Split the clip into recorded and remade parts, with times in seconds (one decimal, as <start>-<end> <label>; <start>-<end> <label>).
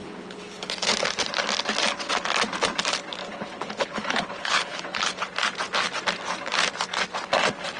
0.0-0.7 remade; 0.7-3.2 recorded; 3.2-5.2 remade; 5.2-7.8 recorded